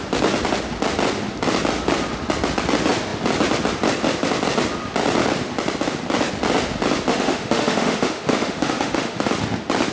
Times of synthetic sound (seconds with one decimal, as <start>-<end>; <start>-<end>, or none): 7.1-9.3